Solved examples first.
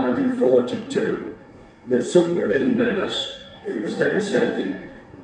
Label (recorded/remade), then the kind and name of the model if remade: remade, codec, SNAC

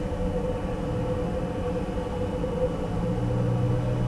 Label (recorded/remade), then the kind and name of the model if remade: recorded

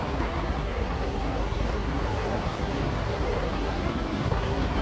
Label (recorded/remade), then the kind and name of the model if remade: remade, codec, SNAC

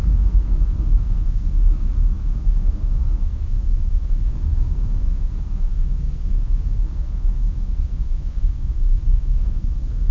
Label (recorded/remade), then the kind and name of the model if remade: remade, codec, SNAC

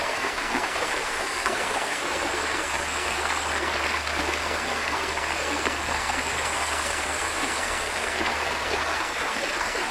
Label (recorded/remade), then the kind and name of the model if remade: remade, codec, SNAC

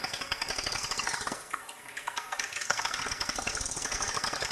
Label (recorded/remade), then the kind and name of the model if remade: remade, codec, SNAC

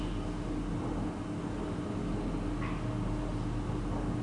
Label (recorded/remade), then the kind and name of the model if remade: recorded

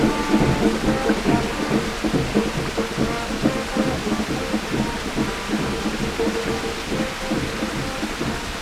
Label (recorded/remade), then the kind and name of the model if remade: recorded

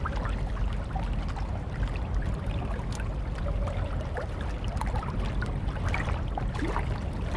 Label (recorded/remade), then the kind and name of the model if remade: recorded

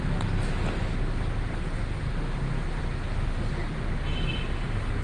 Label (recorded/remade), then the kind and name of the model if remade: recorded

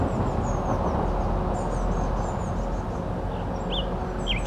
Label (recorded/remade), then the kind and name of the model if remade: recorded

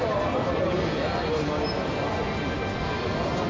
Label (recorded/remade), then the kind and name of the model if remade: recorded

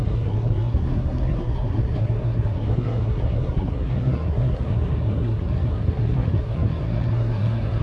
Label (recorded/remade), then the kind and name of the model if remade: remade, codec, SNAC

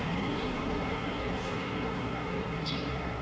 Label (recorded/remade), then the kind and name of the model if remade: remade, codec, SNAC